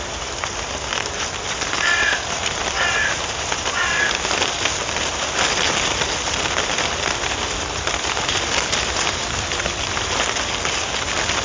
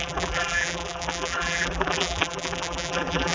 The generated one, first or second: second